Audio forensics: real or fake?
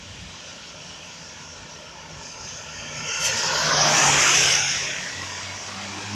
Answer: fake